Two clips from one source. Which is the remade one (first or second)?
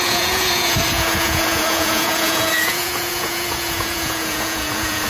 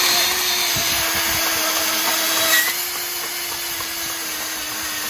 first